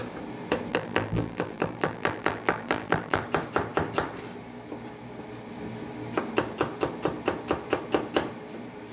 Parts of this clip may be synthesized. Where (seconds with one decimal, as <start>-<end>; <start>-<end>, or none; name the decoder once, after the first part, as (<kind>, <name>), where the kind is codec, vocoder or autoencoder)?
0.7-3.2 (vocoder, BigVGAN v2)